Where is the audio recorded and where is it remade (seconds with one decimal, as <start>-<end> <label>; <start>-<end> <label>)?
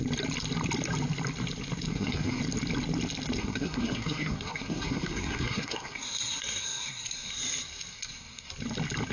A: 0.0-1.9 recorded; 1.9-2.4 remade; 2.4-3.4 recorded; 3.4-7.3 remade; 7.3-7.9 recorded; 7.9-8.5 remade; 8.5-9.1 recorded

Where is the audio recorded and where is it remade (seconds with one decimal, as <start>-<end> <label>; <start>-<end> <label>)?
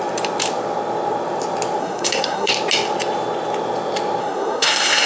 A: 0.0-1.8 recorded; 1.8-2.5 remade; 2.5-4.2 recorded; 4.2-5.1 remade